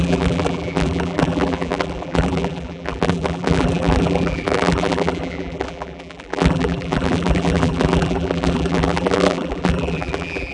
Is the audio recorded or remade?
remade